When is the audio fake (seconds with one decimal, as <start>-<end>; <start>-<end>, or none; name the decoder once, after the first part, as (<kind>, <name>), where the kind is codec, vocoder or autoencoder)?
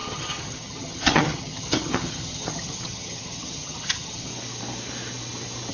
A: 0.0-4.3 (vocoder, HiFi-GAN)